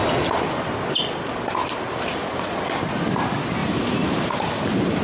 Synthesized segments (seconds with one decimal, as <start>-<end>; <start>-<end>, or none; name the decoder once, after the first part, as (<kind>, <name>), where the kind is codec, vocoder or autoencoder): 1.6-2.7 (vocoder, BigVGAN v2); 3.6-5.0